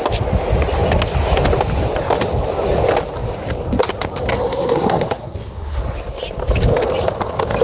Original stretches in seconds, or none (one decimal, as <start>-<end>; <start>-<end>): 0.0-4.3; 5.8-7.6